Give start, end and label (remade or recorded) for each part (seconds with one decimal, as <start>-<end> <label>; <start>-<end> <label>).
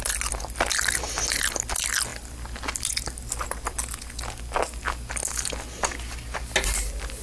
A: 0.0-7.2 recorded